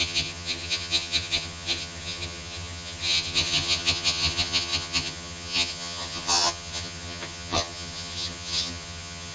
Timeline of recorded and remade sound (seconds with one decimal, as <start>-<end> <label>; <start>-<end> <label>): 0.0-9.3 remade